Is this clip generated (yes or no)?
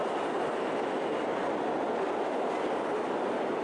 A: no